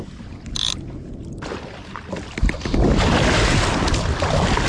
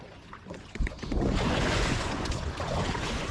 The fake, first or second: second